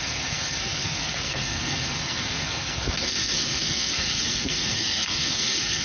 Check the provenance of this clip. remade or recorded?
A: remade